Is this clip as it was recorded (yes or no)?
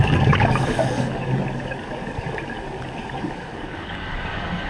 no